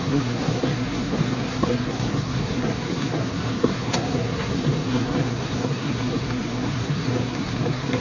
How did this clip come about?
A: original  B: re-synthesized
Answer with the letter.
B